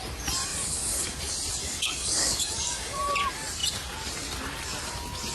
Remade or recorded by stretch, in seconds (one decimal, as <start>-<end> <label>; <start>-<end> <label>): 0.0-0.5 recorded; 0.5-1.2 remade; 1.2-1.6 recorded; 1.6-3.0 remade; 3.0-5.3 recorded